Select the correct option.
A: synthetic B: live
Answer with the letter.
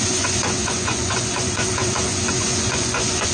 A